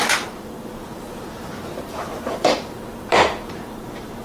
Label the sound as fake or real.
fake